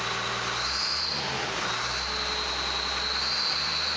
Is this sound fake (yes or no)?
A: no